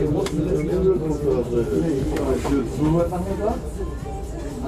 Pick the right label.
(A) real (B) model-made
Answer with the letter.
A